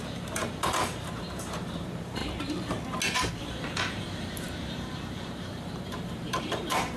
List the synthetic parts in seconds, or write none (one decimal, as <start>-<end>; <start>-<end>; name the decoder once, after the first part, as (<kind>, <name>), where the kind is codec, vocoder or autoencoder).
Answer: 0.0-2.2 (vocoder, BigVGAN v2); 3.3-7.0